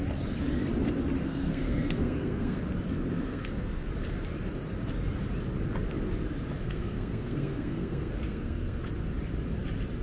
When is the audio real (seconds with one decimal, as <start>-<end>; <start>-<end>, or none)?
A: 0.0-1.2; 2.6-3.1; 3.9-6.6; 8.8-10.0